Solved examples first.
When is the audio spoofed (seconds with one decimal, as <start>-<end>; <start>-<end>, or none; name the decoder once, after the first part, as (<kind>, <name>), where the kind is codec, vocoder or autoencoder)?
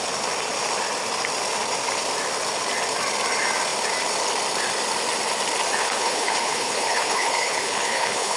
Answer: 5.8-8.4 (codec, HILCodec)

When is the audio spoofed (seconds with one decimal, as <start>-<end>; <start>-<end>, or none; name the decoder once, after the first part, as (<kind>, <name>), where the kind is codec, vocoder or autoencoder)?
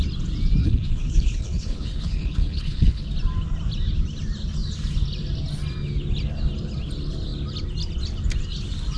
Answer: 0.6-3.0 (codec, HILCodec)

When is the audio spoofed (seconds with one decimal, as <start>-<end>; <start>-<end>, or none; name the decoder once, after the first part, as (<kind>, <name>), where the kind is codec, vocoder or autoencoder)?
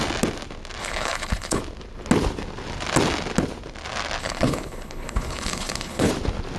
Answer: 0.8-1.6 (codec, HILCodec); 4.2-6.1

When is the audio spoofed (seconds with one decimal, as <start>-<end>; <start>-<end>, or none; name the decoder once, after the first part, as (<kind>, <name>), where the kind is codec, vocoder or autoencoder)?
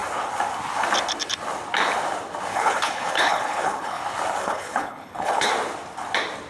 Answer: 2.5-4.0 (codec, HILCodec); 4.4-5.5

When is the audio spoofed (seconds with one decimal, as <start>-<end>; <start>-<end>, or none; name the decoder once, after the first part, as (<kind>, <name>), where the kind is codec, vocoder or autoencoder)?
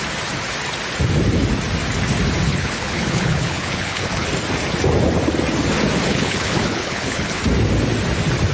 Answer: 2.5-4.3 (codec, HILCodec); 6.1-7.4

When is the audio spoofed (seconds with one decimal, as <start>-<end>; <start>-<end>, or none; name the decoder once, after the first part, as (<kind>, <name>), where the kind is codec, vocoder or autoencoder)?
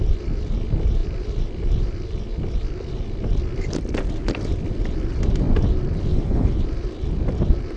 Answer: 6.1-6.6 (codec, HILCodec)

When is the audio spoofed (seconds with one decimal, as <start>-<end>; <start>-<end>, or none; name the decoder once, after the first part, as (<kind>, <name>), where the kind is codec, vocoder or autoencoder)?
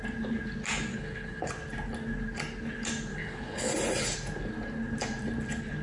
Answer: 0.9-1.5 (codec, HILCodec); 3.1-3.7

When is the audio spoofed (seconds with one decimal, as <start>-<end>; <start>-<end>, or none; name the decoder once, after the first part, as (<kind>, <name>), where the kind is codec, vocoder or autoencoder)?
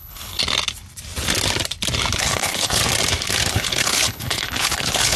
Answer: 0.0-0.4 (codec, HILCodec); 2.2-2.8; 3.5-5.2